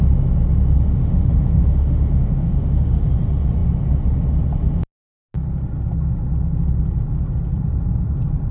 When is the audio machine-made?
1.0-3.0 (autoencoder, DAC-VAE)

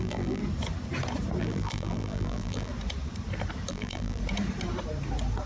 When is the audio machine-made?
0.0-0.4 (vocoder, BigVGAN v2); 1.4-2.7; 3.7-4.2

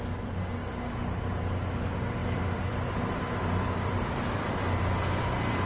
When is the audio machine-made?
2.2-5.7 (vocoder, BigVGAN v2)